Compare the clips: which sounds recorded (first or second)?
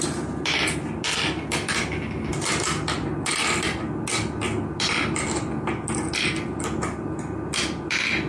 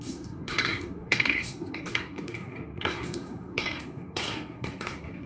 first